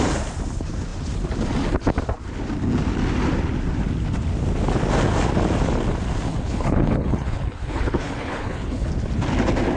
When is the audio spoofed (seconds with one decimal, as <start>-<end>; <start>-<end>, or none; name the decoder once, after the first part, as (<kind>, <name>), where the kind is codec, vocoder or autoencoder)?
6.3-8.9 (codec, HILCodec)